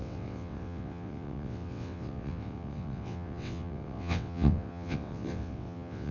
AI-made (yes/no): yes